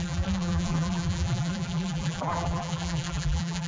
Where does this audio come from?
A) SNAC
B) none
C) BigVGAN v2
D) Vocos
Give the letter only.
C